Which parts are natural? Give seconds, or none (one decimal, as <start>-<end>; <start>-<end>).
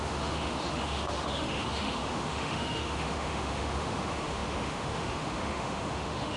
none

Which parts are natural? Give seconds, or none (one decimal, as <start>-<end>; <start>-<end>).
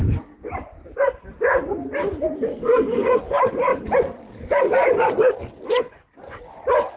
0.0-2.5; 3.2-7.0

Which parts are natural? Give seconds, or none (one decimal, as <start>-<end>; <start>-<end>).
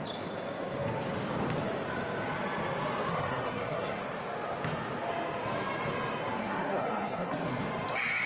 0.0-3.1; 4.0-6.4; 7.6-8.3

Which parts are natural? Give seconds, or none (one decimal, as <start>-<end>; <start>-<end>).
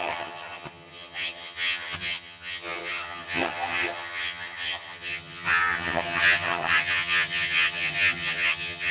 none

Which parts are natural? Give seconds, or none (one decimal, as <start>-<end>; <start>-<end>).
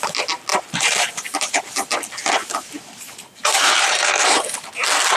0.0-0.5; 1.6-2.4; 4.7-5.2